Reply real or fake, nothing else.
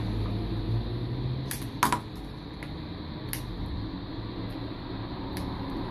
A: real